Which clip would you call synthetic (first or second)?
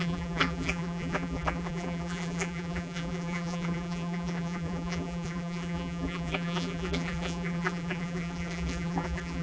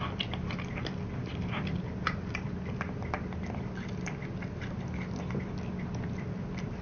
first